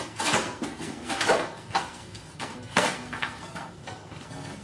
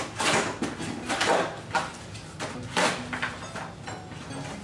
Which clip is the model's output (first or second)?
first